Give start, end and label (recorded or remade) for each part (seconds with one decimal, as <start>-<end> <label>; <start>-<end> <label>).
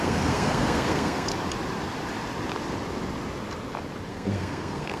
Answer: 0.0-1.3 remade; 1.3-4.1 recorded; 4.1-5.0 remade